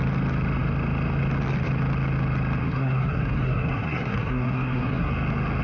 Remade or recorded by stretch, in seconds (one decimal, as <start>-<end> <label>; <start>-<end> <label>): 0.0-2.6 recorded; 2.6-5.1 remade; 5.1-5.6 recorded